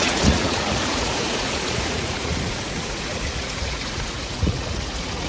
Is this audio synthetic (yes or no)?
yes